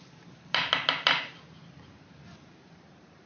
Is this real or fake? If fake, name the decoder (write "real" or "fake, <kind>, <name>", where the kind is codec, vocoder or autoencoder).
fake, vocoder, BigVGAN v2